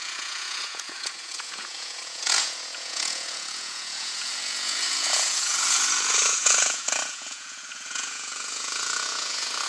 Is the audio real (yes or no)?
no